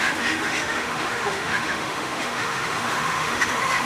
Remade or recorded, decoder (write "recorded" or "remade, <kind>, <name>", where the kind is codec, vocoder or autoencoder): remade, autoencoder, DAC-VAE